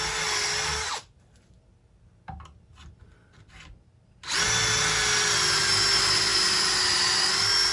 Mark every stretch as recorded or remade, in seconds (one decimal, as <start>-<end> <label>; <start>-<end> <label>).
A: 0.0-0.4 recorded; 0.4-1.3 remade; 1.3-6.3 recorded; 6.3-7.2 remade; 7.2-7.7 recorded